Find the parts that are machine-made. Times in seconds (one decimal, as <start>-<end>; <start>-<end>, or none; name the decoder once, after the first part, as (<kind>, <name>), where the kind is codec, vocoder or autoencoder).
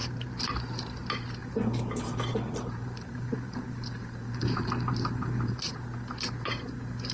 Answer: 0.0-0.5 (vocoder, BigVGAN v2); 1.4-5.7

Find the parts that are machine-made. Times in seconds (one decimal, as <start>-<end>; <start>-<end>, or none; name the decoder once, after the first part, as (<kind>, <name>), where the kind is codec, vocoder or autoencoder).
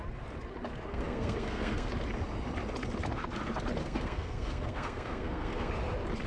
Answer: 0.9-1.9 (codec, SNAC); 3.8-5.7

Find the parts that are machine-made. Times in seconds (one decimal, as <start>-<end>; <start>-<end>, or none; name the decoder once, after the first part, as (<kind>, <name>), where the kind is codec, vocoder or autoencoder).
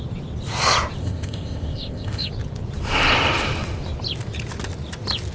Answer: 1.0-2.3 (codec, ZipCodec)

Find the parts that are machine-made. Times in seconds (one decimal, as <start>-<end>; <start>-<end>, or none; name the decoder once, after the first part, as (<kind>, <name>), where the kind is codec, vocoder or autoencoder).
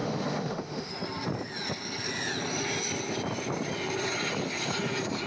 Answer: 0.0-0.9 (autoencoder, DAC-VAE)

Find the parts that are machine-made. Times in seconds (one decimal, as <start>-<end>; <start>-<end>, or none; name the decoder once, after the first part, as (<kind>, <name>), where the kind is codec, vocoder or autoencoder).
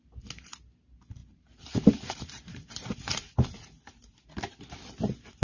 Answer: 1.2-3.1 (vocoder, BigVGAN v2)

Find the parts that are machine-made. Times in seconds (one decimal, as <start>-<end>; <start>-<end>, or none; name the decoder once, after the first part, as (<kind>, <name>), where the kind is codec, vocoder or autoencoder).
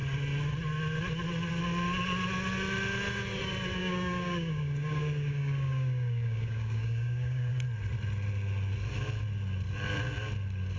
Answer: 3.8-7.5 (codec, DAC)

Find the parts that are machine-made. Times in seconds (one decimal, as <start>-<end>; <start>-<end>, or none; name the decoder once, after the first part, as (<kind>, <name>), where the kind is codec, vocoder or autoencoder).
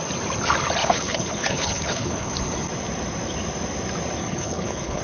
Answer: 0.8-2.3 (codec, HILCodec); 4.3-5.0